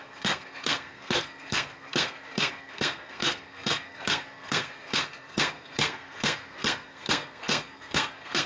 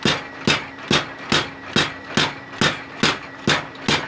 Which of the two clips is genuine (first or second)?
second